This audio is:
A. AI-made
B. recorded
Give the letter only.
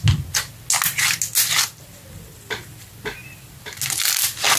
B